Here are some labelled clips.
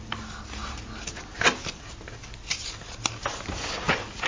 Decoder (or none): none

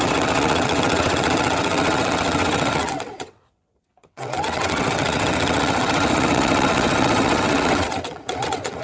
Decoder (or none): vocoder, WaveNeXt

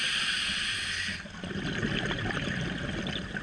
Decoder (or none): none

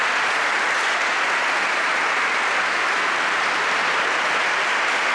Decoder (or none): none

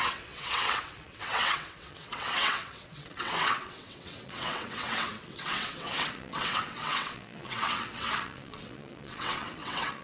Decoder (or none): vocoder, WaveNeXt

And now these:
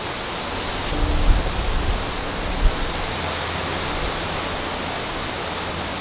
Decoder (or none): none